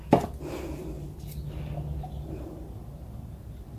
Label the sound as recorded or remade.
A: recorded